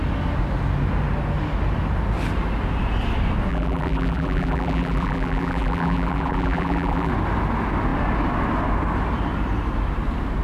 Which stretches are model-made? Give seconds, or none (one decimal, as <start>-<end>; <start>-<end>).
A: 3.5-7.1